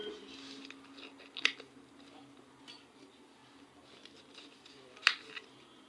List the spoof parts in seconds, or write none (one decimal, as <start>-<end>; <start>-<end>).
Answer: none